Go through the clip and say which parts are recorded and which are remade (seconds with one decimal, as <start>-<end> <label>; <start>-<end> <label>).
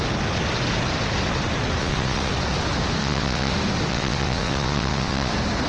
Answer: 0.0-1.8 recorded; 1.8-2.3 remade; 2.3-3.0 recorded; 3.0-3.5 remade; 3.5-3.9 recorded; 3.9-5.3 remade; 5.3-5.7 recorded